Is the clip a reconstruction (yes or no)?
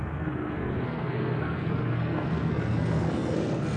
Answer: yes